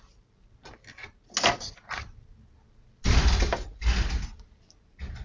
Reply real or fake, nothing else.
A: real